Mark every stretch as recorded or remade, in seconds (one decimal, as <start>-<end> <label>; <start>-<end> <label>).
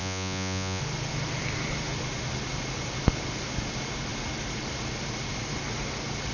0.0-0.8 remade; 0.8-6.3 recorded